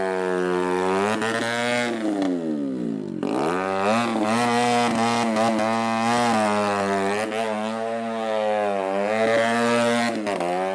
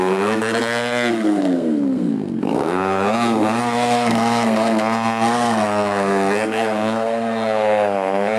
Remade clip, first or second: second